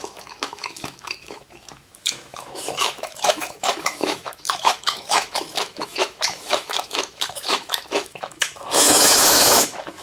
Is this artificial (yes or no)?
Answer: yes